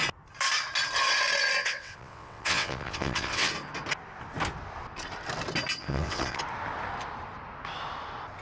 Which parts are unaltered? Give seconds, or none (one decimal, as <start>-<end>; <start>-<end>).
0.0-1.6; 3.5-5.8; 6.4-8.4